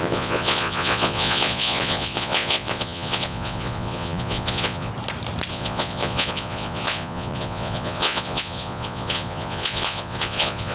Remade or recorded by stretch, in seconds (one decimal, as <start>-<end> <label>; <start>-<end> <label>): 0.0-4.9 remade; 4.9-5.5 recorded; 5.5-10.7 remade